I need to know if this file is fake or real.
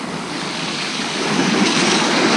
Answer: fake